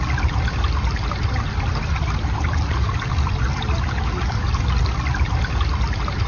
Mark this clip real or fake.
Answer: real